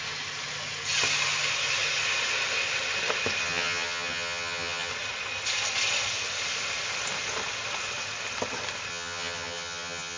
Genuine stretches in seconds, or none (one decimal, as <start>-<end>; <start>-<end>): 0.0-3.4; 4.9-8.9